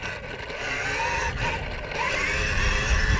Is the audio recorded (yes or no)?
yes